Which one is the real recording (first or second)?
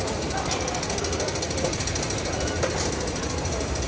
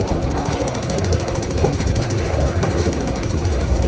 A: first